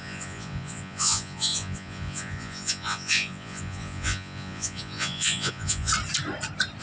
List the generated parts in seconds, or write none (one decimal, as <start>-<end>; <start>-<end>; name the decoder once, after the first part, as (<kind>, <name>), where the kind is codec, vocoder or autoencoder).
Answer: 0.0-5.9 (vocoder, Vocos)